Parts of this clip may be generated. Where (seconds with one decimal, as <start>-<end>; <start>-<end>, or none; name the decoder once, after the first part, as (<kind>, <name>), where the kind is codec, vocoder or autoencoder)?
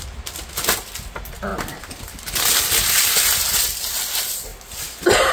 none